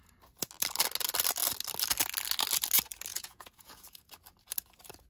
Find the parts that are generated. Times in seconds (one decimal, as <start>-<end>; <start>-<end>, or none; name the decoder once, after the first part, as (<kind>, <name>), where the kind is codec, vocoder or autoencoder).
3.1-4.1 (vocoder, Vocos)